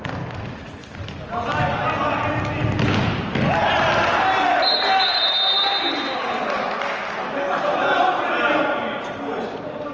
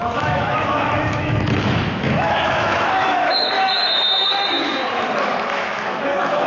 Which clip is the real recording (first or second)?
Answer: first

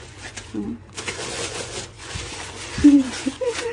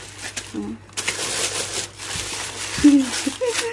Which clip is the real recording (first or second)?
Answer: second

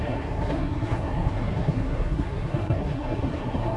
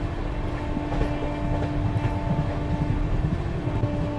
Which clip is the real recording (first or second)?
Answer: second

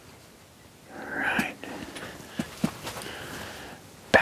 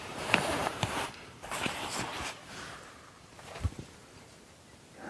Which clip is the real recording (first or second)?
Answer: first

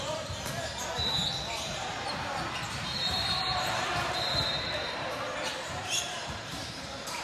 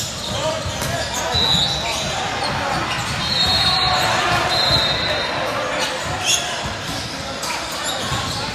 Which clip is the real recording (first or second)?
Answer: second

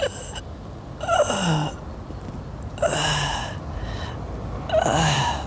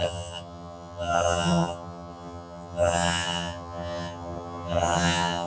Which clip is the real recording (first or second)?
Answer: first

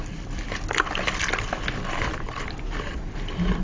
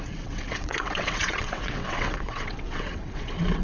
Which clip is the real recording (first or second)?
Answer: first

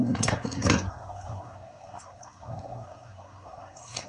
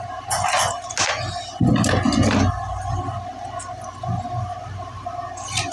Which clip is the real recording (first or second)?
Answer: second